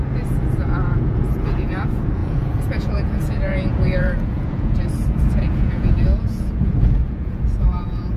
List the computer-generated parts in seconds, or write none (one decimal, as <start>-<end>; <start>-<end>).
0.0-8.2